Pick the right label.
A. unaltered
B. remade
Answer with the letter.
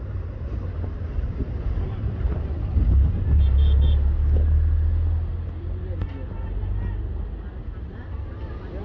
A